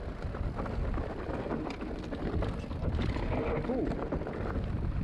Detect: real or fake real